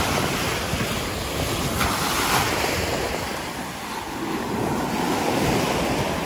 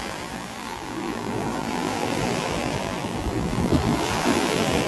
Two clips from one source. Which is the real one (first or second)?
first